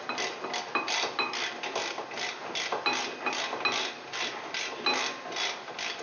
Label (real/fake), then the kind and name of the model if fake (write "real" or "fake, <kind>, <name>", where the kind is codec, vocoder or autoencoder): real